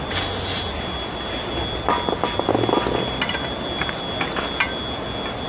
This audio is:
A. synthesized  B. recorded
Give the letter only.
B